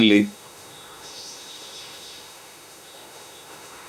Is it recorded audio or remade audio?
remade